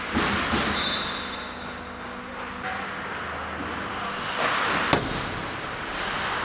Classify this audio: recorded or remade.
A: recorded